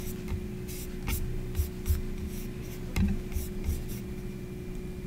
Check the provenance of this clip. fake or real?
real